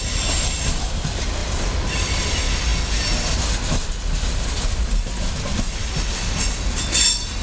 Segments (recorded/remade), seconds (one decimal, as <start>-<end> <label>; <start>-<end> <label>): 0.0-7.4 recorded

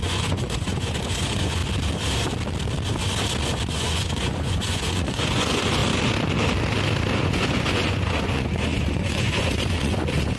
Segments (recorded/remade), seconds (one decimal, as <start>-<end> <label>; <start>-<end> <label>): 0.0-1.6 remade; 1.6-3.7 recorded; 3.7-5.8 remade; 5.8-7.2 recorded; 7.2-10.4 remade

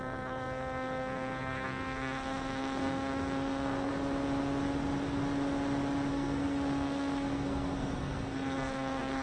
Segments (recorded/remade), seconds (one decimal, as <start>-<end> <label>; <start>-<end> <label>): 0.0-3.9 remade; 3.9-6.1 recorded; 6.1-9.2 remade

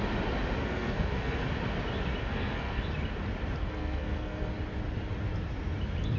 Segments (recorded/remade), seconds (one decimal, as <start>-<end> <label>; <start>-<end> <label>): 0.0-0.6 recorded; 0.6-1.4 remade; 1.4-2.2 recorded; 2.2-2.8 remade; 2.8-3.6 recorded; 3.6-4.5 remade; 4.5-6.2 recorded